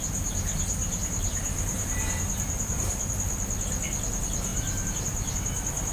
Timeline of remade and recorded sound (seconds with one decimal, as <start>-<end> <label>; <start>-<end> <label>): 0.0-0.8 recorded; 0.8-3.1 remade; 3.1-4.5 recorded; 4.5-5.3 remade; 5.3-5.9 recorded